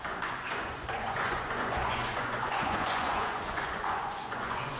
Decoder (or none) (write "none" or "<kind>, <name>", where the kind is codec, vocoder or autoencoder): vocoder, Vocos